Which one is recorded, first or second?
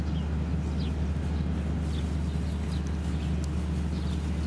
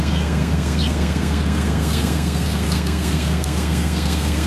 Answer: first